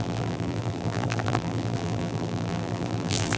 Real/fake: fake